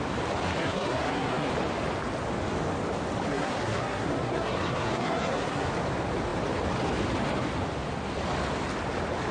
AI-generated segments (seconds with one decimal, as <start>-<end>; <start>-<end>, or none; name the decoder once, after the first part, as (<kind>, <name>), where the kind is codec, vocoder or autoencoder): 0.6-1.5 (codec, SNAC); 3.3-5.7